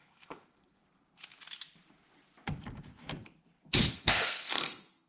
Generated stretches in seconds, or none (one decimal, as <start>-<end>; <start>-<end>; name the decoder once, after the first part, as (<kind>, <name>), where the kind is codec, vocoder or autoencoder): 0.0-0.8 (codec, SNAC); 3.9-5.1